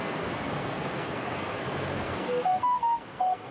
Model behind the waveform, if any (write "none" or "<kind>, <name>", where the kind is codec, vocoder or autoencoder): codec, SNAC